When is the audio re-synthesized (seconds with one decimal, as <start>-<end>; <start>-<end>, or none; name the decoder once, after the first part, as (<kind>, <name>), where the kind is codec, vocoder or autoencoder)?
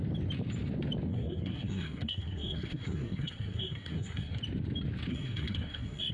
1.1-4.4 (codec, SNAC); 5.1-6.1